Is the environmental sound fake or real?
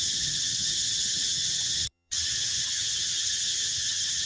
fake